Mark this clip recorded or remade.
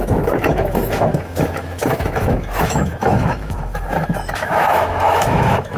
remade